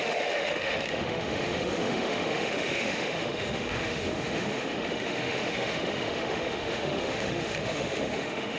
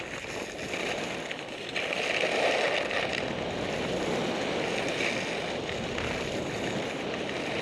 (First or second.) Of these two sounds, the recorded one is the second